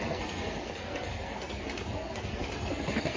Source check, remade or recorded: remade